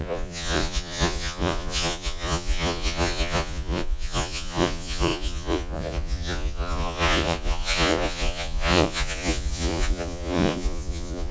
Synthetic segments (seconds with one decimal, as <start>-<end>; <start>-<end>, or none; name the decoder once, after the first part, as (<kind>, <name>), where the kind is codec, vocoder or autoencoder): 0.0-11.3 (vocoder, Vocos)